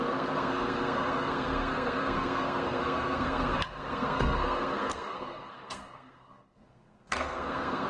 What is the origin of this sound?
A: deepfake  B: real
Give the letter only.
A